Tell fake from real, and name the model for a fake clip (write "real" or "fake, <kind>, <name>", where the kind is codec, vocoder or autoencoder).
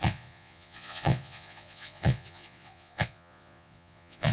fake, vocoder, Vocos